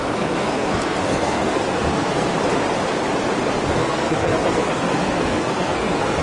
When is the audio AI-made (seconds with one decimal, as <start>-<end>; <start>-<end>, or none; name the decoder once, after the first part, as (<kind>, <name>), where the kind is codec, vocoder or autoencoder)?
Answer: 0.0-2.3 (codec, SNAC); 3.8-6.2

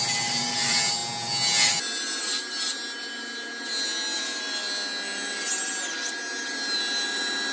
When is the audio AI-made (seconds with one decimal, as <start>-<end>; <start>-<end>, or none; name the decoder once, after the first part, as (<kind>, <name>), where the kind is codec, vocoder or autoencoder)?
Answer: none

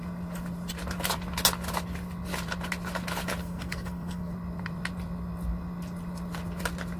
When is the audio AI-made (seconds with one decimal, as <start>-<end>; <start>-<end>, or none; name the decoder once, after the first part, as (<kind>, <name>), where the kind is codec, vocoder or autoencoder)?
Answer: 3.4-4.3 (codec, SNAC)

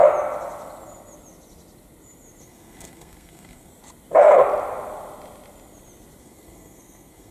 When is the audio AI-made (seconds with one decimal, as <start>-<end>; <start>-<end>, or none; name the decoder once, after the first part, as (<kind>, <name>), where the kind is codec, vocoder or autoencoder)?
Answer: 2.4-3.7 (codec, SNAC); 6.2-7.3

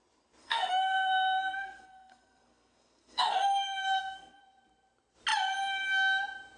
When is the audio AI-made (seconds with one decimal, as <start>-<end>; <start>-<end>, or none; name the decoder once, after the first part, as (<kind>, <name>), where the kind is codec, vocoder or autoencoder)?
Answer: 0.4-4.4 (codec, SNAC)